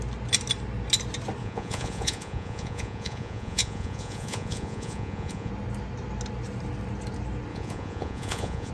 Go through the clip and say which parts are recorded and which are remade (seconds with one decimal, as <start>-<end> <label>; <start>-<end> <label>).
0.0-1.4 recorded; 1.4-5.5 remade; 5.5-7.5 recorded; 7.5-8.7 remade